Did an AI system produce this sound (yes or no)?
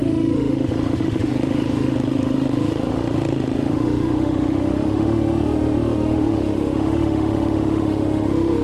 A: yes